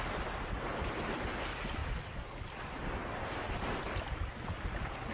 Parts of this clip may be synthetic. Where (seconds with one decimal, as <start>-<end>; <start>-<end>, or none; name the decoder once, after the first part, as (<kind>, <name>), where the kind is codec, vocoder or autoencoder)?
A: none